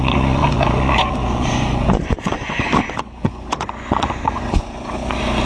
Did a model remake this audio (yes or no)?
yes